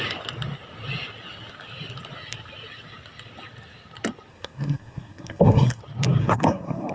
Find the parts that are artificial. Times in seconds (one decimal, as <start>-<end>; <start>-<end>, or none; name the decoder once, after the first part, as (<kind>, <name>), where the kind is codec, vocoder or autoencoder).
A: 4.3-5.8 (codec, SNAC); 6.2-6.9